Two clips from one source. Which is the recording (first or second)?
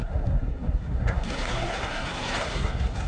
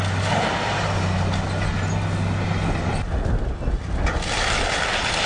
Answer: second